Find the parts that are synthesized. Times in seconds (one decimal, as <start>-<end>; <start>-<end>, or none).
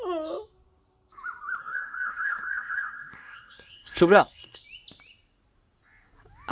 1.6-4.6